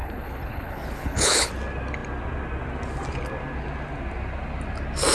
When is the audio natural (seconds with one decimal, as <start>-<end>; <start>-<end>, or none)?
1.5-5.1